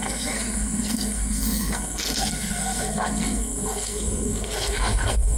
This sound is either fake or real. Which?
fake